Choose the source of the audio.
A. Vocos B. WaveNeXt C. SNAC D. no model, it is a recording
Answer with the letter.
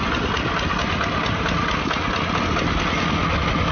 D